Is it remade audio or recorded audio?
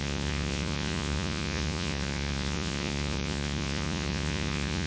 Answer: remade